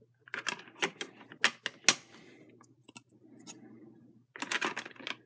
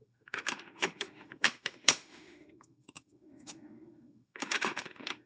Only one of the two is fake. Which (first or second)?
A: second